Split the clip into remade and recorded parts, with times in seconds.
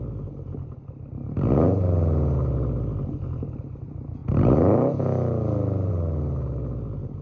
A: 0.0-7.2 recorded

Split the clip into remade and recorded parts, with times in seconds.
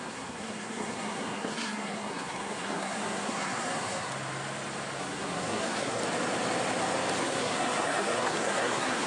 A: 0.0-4.1 remade; 4.1-5.0 recorded; 5.0-6.0 remade; 6.0-7.2 recorded; 7.2-9.1 remade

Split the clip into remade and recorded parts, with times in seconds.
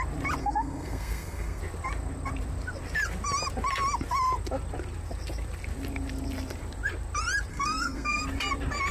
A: 0.0-0.4 recorded; 0.4-1.6 remade; 1.6-7.5 recorded; 7.5-8.2 remade; 8.2-8.9 recorded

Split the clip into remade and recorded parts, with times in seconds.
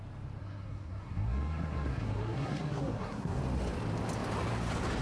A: 0.0-0.4 recorded; 0.4-3.4 remade; 3.4-5.0 recorded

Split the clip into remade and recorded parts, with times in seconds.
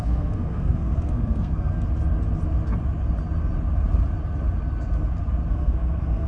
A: 0.0-1.7 remade; 1.7-5.5 recorded; 5.5-6.3 remade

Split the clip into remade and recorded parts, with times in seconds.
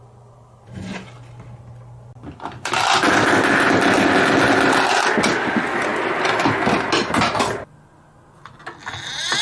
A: 0.0-9.4 recorded